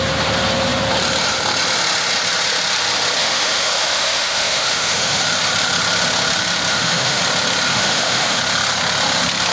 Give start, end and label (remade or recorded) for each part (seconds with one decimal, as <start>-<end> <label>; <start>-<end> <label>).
0.0-3.2 recorded; 3.2-5.2 remade; 5.2-6.7 recorded; 6.7-7.2 remade; 7.2-7.7 recorded; 7.7-8.4 remade; 8.4-9.5 recorded